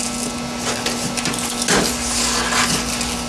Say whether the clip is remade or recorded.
recorded